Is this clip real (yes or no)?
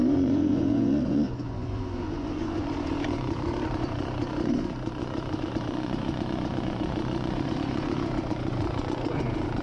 no